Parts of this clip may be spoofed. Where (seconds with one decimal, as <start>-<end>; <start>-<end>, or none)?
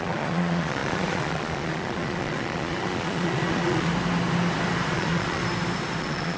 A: 0.0-3.9; 4.9-5.4; 6.0-6.4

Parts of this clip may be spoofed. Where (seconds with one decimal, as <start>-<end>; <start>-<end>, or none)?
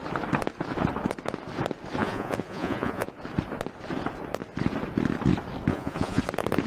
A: 2.0-3.1; 5.7-6.2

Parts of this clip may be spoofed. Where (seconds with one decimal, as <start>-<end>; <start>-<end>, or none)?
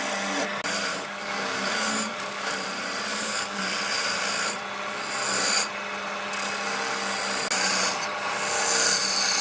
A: 0.9-2.5; 3.1-3.6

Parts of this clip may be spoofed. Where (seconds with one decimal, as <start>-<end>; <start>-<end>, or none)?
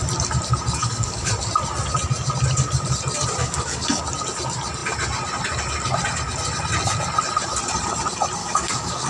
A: 0.8-1.3; 3.4-4.0; 8.4-9.1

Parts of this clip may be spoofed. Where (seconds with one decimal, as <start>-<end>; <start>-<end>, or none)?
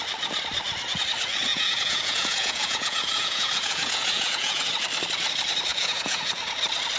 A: 1.5-4.7; 5.7-6.4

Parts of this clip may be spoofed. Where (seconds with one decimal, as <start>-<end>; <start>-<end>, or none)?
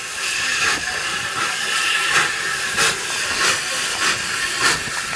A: none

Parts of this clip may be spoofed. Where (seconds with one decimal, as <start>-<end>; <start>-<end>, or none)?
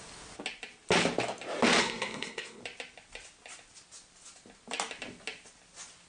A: 1.8-2.6